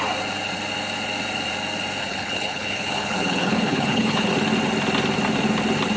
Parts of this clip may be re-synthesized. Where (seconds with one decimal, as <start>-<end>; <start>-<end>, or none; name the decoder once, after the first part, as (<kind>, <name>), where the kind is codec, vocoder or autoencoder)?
2.0-4.3 (codec, HILCodec)